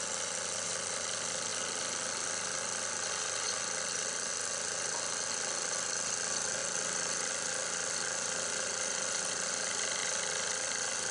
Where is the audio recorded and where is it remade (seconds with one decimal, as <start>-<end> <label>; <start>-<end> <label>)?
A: 0.0-11.1 recorded